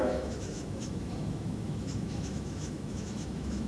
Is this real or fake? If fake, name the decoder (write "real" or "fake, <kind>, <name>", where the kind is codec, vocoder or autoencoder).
fake, autoencoder, DAC-VAE